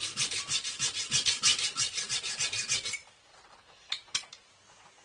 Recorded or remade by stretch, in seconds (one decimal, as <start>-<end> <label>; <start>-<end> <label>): 0.0-3.0 recorded; 3.0-4.1 remade; 4.1-5.0 recorded